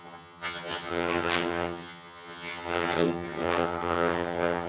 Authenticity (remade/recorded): remade